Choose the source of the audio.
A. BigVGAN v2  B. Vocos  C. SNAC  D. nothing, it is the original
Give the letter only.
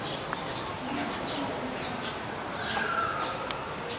D